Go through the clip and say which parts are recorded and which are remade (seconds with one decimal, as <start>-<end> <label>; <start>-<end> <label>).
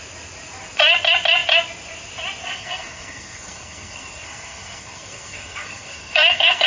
0.0-2.4 recorded; 2.4-6.7 remade